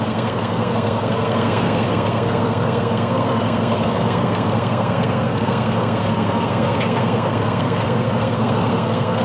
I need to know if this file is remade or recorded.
remade